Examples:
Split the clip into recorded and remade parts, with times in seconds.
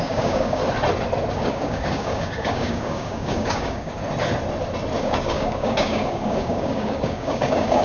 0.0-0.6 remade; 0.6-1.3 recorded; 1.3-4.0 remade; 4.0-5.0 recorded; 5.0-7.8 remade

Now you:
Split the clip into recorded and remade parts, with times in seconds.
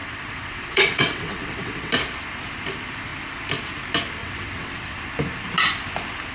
0.0-1.9 remade; 1.9-4.2 recorded; 4.2-5.0 remade; 5.0-6.3 recorded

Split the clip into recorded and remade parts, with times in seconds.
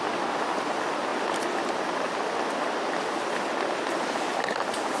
0.0-5.0 recorded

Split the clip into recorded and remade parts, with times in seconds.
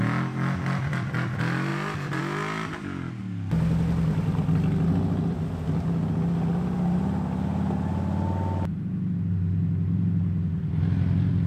0.0-11.5 recorded